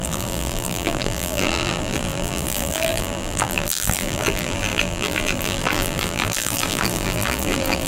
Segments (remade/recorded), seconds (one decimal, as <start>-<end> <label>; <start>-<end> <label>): 0.0-7.9 remade